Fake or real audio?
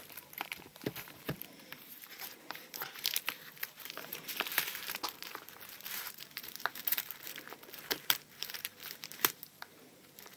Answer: fake